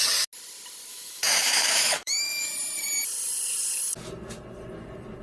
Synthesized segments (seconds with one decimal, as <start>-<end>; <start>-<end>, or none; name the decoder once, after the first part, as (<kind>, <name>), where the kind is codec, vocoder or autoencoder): 0.9-2.5 (autoencoder, DAC-VAE)